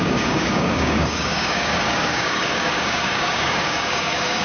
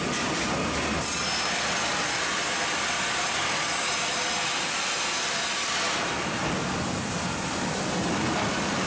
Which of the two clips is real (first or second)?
second